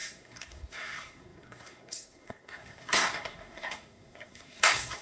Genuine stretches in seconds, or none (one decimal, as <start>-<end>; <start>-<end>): none